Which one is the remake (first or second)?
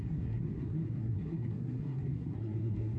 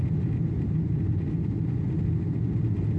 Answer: first